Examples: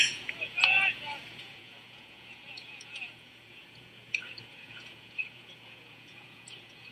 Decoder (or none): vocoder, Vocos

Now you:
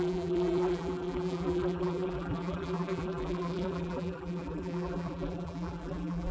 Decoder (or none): vocoder, BigVGAN v2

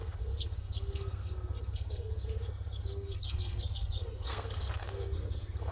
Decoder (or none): codec, SNAC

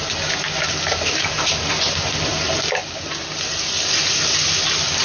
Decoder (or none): none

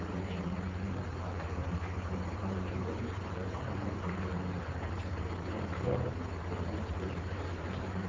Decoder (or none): vocoder, BigVGAN v2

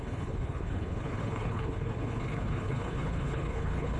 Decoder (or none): codec, HILCodec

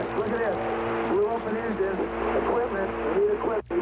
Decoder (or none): none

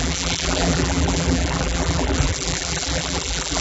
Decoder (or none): vocoder, BigVGAN v2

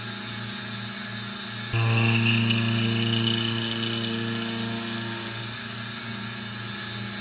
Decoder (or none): none